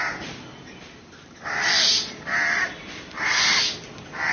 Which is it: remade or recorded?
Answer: recorded